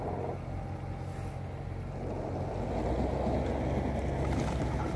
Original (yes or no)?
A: yes